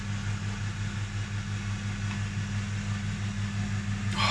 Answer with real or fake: real